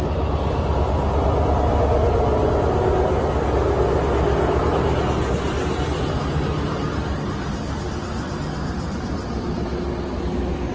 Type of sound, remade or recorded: recorded